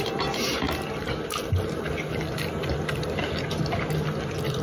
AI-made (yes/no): no